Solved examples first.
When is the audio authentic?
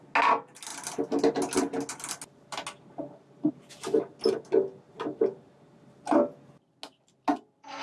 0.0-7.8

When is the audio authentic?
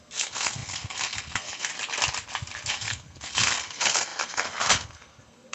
1.7-2.7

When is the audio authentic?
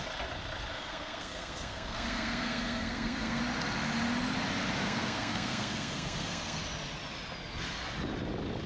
0.0-0.7; 3.4-4.8; 6.6-8.7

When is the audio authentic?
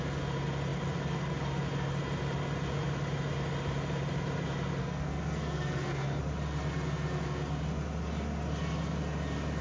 0.0-4.8; 6.2-9.6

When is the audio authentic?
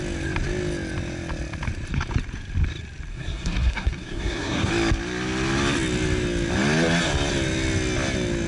0.0-3.1; 4.7-8.5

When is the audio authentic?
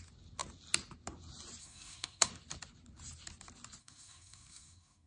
0.0-1.6; 2.3-3.8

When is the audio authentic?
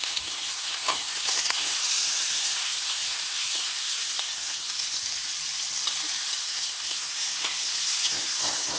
5.0-6.4